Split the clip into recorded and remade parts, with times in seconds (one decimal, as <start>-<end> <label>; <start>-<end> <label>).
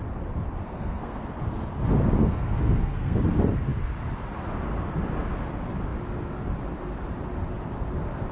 0.0-0.6 recorded; 0.6-1.2 remade; 1.2-2.2 recorded; 2.2-3.2 remade; 3.2-8.3 recorded